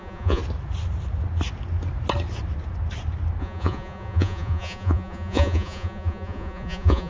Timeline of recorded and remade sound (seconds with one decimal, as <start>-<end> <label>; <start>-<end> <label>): 0.0-0.4 remade; 0.4-3.4 recorded; 3.4-7.1 remade